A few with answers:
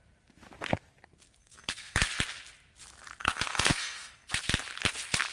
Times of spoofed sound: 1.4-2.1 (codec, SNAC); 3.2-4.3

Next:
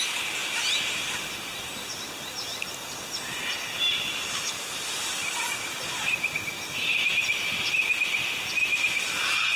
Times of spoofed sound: none

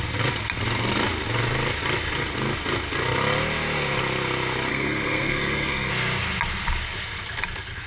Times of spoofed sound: 4.7-5.9 (codec, SNAC)

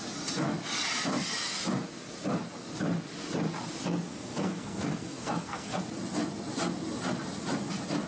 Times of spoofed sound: 4.1-5.8 (codec, SNAC)